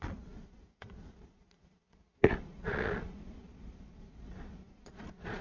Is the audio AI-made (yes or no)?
yes